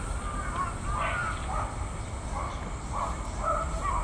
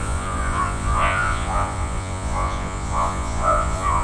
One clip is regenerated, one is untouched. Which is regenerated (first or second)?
second